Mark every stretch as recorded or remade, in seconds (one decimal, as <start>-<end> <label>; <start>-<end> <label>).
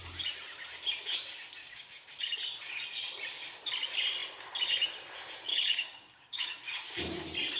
0.0-1.6 recorded; 1.6-2.2 remade; 2.2-5.5 recorded; 5.5-6.7 remade; 6.7-7.6 recorded